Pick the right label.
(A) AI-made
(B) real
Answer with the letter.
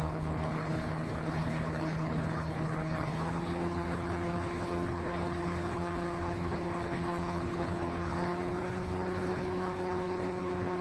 A